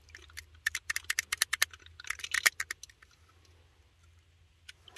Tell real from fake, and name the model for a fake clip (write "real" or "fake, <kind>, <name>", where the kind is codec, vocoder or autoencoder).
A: real